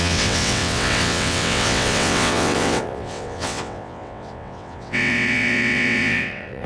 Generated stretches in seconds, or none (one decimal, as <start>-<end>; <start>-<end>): 0.0-6.7